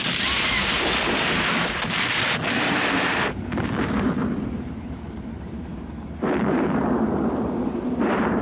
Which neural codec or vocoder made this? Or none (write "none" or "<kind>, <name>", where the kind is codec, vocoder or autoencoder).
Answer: vocoder, BigVGAN v2